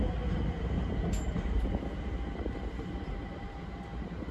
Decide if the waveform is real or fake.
real